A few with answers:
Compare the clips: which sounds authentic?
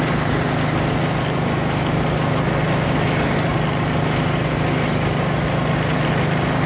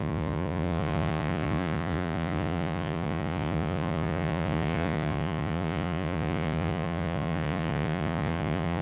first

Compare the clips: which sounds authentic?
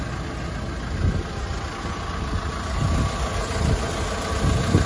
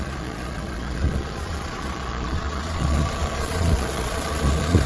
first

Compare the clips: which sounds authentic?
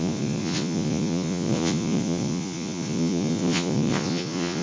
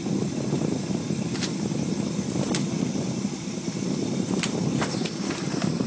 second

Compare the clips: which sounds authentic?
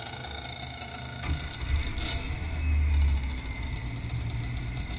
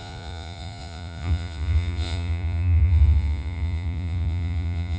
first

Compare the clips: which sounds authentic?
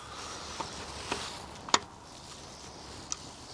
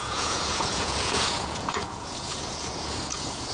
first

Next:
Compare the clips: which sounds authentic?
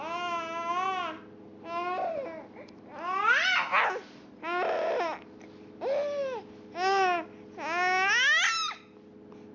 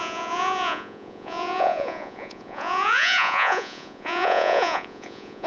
first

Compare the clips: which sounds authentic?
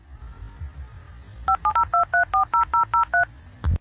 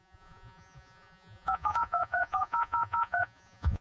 first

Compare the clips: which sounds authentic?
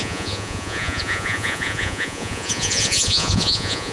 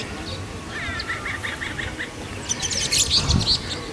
second